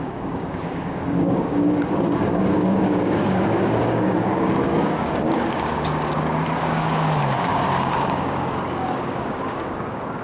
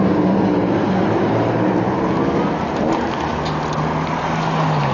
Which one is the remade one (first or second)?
first